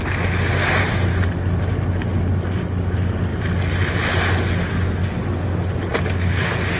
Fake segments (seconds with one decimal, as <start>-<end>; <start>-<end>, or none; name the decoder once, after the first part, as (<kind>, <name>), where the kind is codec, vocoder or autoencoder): none